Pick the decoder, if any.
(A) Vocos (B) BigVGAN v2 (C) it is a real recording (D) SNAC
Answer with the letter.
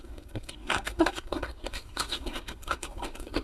D